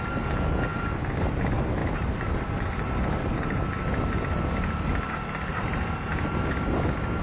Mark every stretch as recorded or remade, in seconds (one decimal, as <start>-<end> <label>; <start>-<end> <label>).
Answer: 0.0-0.7 recorded; 0.7-1.2 remade; 1.2-1.8 recorded; 1.8-3.6 remade; 3.6-5.5 recorded; 5.5-6.1 remade; 6.1-7.2 recorded